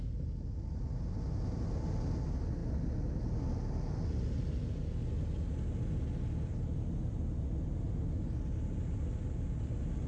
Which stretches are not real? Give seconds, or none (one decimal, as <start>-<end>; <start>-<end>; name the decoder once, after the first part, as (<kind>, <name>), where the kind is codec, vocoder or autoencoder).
none

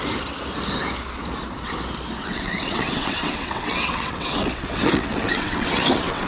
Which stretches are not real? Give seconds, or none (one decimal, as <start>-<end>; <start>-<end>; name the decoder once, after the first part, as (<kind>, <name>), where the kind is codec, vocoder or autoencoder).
2.2-6.3 (vocoder, WaveNeXt)

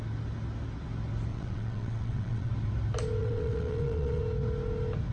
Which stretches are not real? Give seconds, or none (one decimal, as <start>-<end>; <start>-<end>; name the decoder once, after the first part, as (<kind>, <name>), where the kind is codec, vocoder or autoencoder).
1.3-2.5 (vocoder, WaveNeXt); 3.2-4.2

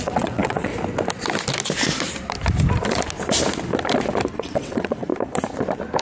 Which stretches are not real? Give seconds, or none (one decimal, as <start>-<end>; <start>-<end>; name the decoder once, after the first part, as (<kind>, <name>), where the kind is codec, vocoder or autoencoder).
0.0-0.7 (vocoder, WaveNeXt); 4.3-5.1

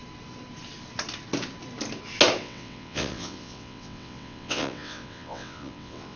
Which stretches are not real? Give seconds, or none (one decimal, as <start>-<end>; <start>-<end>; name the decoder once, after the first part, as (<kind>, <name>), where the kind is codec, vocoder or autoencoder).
2.4-6.2 (vocoder, WaveNeXt)

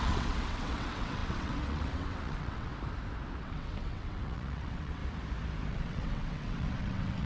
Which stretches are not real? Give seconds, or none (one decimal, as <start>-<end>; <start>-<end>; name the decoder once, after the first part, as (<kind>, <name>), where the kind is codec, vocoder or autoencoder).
0.0-2.7 (vocoder, WaveNeXt); 3.4-5.0; 5.7-7.3